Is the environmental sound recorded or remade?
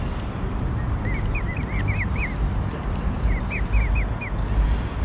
recorded